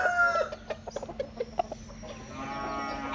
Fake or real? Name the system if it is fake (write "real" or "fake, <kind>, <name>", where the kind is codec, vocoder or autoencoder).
real